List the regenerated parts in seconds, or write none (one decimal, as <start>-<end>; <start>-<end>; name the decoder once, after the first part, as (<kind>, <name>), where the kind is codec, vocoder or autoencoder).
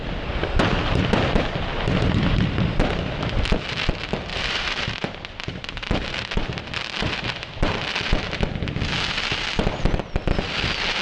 4.3-7.9 (vocoder, BigVGAN v2)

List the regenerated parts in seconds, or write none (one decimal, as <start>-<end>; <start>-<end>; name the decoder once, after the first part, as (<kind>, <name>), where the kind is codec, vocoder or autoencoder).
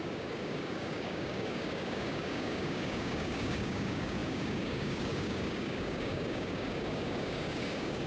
0.0-8.1 (codec, DAC)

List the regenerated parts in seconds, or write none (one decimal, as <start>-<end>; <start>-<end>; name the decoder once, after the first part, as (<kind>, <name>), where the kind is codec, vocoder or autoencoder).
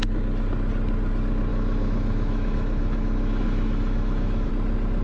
1.5-4.5 (autoencoder, DAC-VAE)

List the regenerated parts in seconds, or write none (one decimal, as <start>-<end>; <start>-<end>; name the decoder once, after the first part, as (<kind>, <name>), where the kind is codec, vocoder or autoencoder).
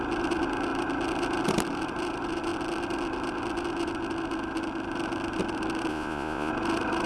5.9-6.5 (vocoder, Vocos)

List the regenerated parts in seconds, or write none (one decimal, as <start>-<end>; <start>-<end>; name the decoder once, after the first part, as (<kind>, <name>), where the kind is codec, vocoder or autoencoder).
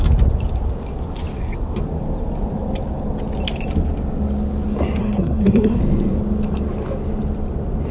5.0-5.8 (codec, SNAC)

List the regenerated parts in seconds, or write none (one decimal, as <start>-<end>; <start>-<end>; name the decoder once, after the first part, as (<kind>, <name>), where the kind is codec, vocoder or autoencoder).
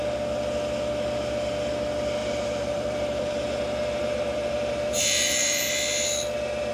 2.2-5.7 (vocoder, BigVGAN v2)